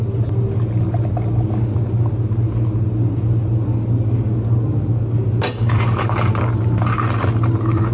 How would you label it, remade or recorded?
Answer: recorded